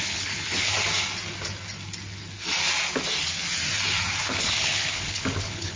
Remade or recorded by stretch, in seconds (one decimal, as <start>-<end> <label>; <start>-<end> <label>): 0.0-0.7 remade; 0.7-4.2 recorded; 4.2-5.8 remade